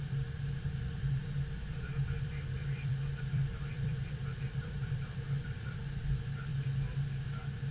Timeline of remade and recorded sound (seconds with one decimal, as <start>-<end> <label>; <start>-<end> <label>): 0.0-1.2 recorded; 1.2-5.8 remade; 5.8-7.7 recorded